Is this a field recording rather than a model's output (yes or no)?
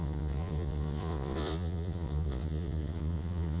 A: no